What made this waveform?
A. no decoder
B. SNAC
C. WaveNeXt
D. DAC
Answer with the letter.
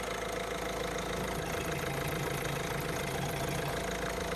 A